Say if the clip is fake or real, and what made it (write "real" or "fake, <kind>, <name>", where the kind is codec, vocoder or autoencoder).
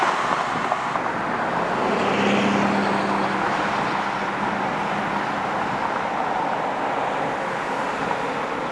real